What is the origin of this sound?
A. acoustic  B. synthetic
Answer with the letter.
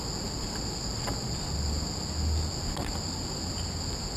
A